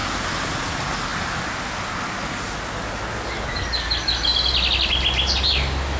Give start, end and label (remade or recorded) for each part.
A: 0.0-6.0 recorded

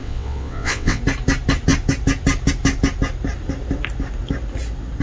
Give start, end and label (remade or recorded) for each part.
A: 0.0-1.0 remade; 1.0-5.0 recorded

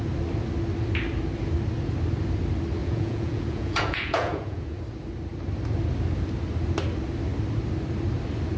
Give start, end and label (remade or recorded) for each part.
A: 0.0-2.8 recorded; 2.8-4.8 remade; 4.8-8.6 recorded

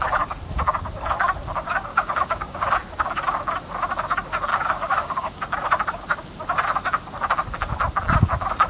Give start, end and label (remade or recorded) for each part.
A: 0.0-1.9 recorded; 1.9-2.7 remade; 2.7-4.5 recorded; 4.5-5.4 remade; 5.4-8.7 recorded

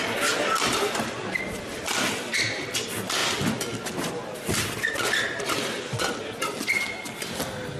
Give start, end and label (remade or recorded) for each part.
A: 0.0-7.8 recorded

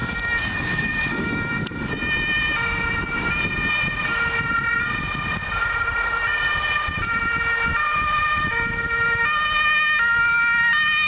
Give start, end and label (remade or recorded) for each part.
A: 0.0-1.9 remade; 1.9-11.1 recorded